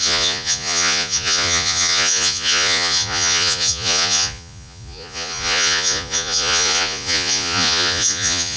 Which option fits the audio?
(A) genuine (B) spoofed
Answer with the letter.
B